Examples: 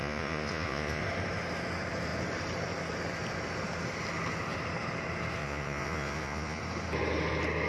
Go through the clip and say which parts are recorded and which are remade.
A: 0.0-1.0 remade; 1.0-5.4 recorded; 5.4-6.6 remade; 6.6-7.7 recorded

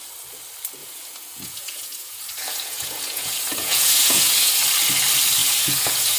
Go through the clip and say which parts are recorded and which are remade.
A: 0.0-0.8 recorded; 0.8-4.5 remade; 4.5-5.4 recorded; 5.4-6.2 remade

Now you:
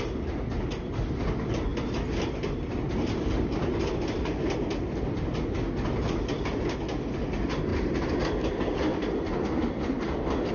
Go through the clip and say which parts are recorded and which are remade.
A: 0.0-10.5 recorded

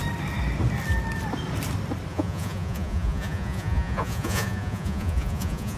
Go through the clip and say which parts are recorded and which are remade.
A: 0.0-2.1 recorded; 2.1-5.8 remade

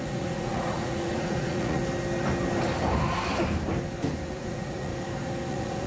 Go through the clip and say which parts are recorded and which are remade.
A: 0.0-1.8 remade; 1.8-4.3 recorded; 4.3-4.9 remade; 4.9-5.5 recorded; 5.5-5.9 remade